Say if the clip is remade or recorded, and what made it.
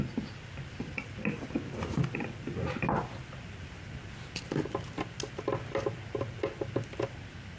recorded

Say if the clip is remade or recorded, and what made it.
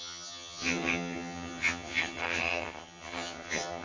remade, vocoder, HiFi-GAN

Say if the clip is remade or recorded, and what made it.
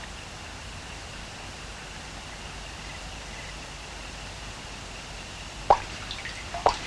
recorded